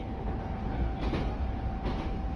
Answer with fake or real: real